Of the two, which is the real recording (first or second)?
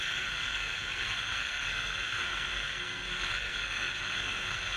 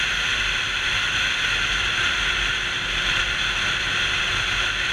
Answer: second